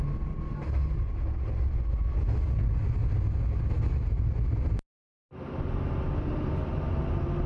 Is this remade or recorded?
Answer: recorded